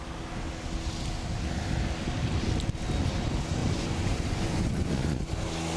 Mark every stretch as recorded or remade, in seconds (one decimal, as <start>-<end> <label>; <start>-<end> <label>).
0.0-3.6 recorded; 3.6-5.3 remade; 5.3-5.8 recorded